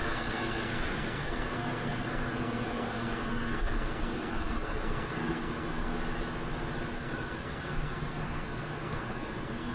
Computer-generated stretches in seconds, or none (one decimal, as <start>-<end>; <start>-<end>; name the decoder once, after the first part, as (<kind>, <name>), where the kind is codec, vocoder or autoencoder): 0.0-5.9 (codec, SNAC); 6.9-9.7